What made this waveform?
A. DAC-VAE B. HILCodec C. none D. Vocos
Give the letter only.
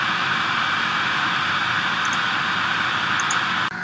C